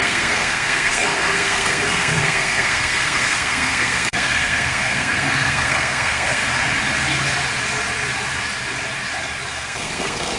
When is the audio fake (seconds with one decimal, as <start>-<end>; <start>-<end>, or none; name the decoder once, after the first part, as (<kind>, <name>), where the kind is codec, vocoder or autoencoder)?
0.0-6.4 (codec, SNAC); 9.5-10.4